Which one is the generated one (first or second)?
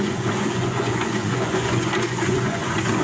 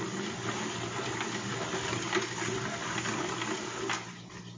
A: first